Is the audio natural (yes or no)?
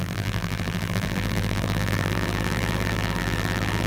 no